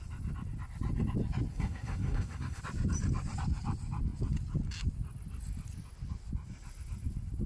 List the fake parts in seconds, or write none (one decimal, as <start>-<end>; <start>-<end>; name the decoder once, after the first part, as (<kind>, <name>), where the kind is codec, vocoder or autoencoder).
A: 1.5-2.6 (codec, SNAC)